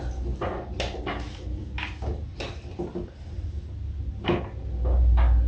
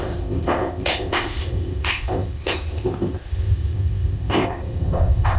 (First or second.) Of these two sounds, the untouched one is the first